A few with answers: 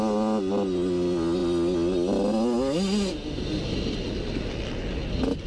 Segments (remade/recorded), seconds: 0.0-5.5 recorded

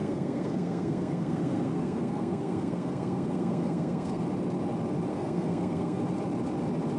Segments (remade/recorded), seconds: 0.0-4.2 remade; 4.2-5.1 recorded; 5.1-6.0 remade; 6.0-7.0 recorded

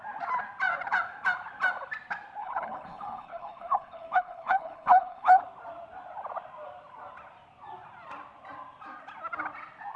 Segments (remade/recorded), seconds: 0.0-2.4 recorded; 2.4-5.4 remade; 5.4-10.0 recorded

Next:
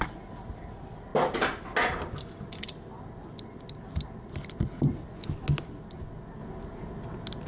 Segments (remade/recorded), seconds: 0.0-7.5 recorded